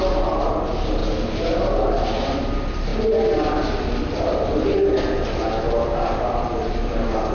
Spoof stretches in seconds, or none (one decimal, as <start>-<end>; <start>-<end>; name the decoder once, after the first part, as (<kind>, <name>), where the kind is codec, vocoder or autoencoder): none